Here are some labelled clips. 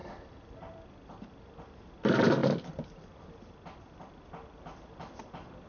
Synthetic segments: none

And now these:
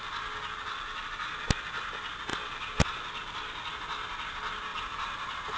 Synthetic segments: 4.7-5.6 (vocoder, BigVGAN v2)

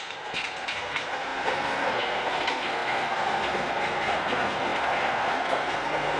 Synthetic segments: 0.0-6.2 (codec, SNAC)

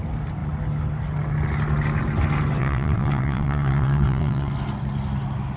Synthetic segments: 2.6-4.5 (vocoder, WaveNeXt)